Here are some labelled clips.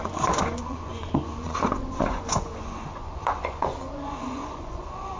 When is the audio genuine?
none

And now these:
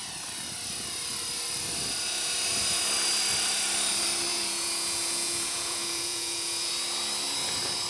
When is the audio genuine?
0.0-4.3; 6.7-7.9